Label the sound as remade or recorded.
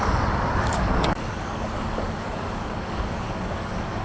remade